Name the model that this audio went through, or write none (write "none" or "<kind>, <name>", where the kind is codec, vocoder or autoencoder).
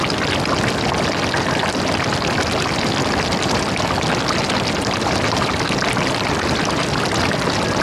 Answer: none